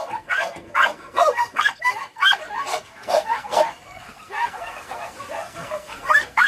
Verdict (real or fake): fake